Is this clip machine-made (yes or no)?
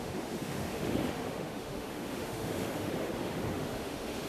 yes